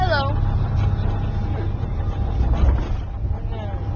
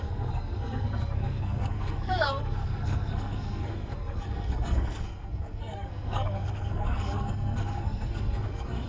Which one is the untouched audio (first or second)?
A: first